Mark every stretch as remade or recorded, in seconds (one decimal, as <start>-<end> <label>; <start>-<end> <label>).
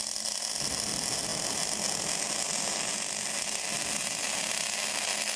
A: 0.0-5.4 recorded